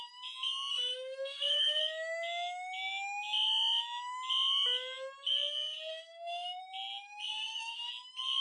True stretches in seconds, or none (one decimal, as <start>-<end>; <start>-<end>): 0.0-0.7; 1.8-5.9; 6.6-7.3; 7.9-8.4